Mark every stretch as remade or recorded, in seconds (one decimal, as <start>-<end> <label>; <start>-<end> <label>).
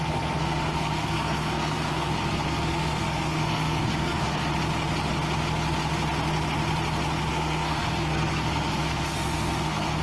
0.0-4.5 remade; 4.5-7.3 recorded; 7.3-10.0 remade